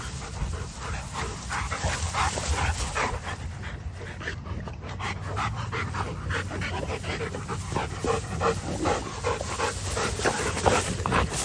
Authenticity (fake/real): real